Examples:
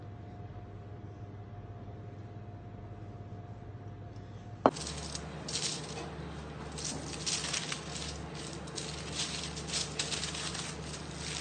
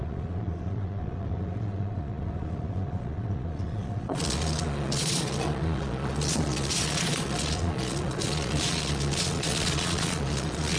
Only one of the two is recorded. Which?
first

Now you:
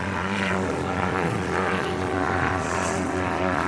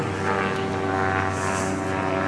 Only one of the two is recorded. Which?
second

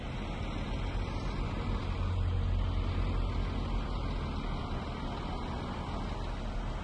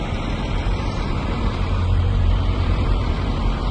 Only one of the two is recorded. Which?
first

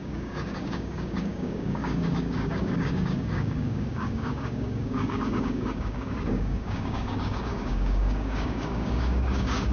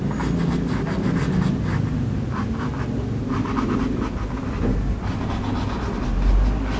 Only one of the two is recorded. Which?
second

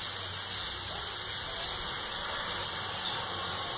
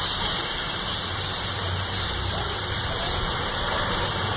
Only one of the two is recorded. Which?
first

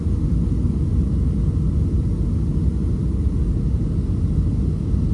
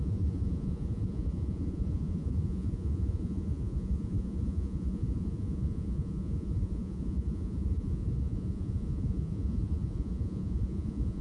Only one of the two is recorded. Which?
first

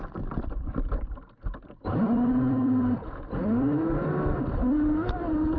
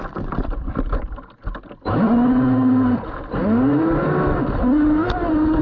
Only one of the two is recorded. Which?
second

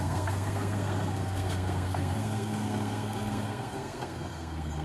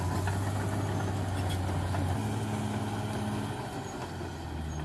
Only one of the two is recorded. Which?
second